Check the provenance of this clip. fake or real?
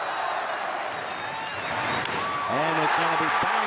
real